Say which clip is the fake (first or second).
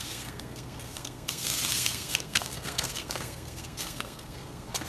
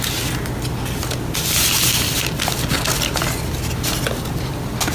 first